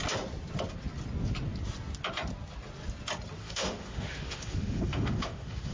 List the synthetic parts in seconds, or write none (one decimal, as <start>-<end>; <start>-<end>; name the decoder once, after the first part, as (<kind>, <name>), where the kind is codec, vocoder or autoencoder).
3.4-5.7 (autoencoder, DAC-VAE)